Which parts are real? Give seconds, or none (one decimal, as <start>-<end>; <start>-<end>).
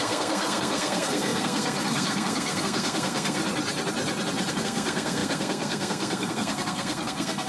3.4-4.5